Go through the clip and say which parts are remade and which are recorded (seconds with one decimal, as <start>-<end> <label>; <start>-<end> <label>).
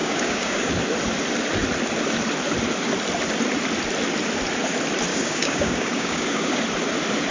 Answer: 0.0-0.7 remade; 0.7-5.1 recorded; 5.1-6.6 remade; 6.6-7.3 recorded